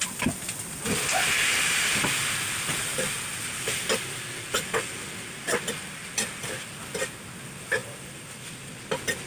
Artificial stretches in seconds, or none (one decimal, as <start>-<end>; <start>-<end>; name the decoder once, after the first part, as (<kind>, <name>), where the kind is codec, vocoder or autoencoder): 7.8-8.5 (vocoder, BigVGAN v2)

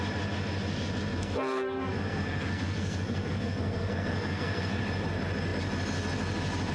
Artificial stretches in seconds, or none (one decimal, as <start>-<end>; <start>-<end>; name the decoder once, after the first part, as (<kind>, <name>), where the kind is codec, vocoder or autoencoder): 1.2-4.8 (codec, SNAC)